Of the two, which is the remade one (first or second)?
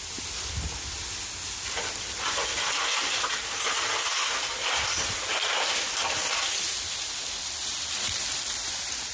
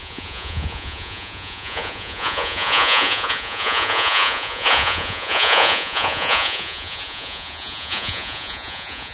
second